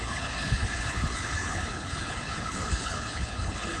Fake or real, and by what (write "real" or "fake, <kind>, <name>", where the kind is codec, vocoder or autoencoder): fake, codec, HILCodec